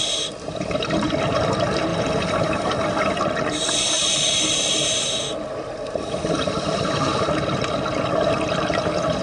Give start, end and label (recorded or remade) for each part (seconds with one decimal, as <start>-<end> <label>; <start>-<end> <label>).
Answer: 0.0-9.2 recorded